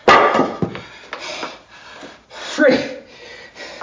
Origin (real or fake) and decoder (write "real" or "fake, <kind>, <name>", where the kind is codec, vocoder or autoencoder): real